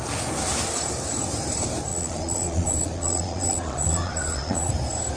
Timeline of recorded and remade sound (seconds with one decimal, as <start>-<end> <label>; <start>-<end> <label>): 0.0-1.9 recorded; 1.9-4.7 remade; 4.7-5.2 recorded